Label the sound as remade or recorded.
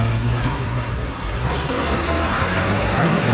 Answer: remade